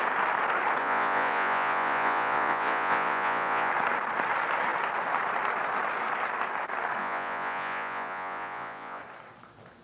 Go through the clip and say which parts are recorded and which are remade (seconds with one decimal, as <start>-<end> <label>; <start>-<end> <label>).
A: 0.0-0.8 recorded; 0.8-3.7 remade; 3.7-7.0 recorded; 7.0-9.0 remade; 9.0-9.8 recorded